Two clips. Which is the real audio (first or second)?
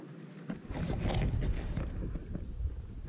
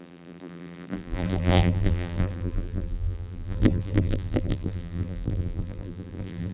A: first